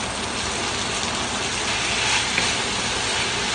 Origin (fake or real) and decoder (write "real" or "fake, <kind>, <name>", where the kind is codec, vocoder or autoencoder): real